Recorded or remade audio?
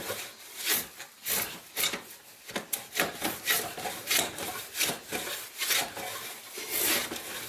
recorded